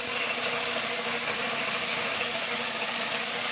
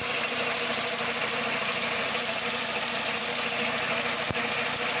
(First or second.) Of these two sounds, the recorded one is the second